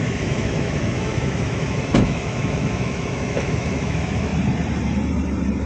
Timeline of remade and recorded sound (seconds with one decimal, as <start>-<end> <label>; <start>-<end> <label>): 0.0-4.3 remade; 4.3-5.7 recorded